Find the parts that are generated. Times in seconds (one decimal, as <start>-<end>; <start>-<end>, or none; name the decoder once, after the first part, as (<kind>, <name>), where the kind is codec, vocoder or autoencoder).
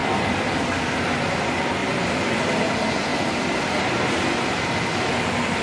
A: none